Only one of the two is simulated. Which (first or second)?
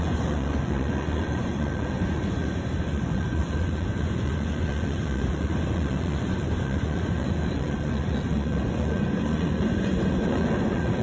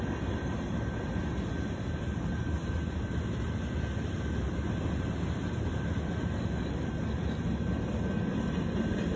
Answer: first